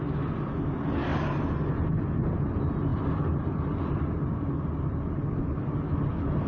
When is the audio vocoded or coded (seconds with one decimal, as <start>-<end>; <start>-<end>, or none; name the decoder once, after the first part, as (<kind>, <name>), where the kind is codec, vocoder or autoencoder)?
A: none

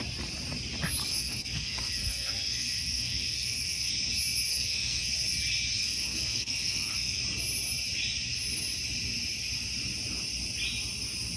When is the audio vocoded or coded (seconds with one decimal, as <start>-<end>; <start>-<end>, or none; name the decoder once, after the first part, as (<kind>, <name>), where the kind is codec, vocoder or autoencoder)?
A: 1.0-3.9 (codec, SNAC); 4.5-5.1; 5.8-7.2